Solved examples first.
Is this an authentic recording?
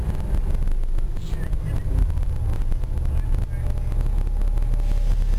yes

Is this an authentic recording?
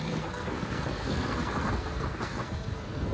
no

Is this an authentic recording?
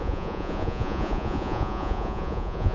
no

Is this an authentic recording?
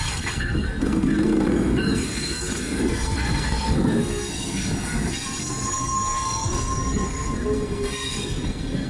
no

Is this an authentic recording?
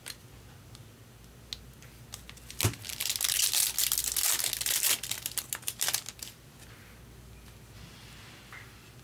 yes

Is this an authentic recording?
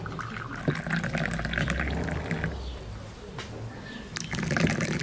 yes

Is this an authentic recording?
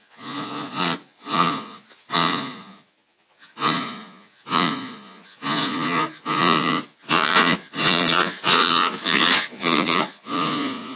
no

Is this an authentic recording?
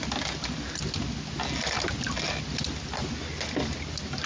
yes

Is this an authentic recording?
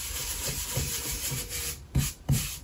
no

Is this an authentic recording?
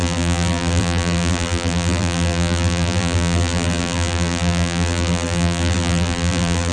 no